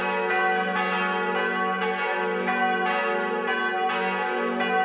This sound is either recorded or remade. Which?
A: recorded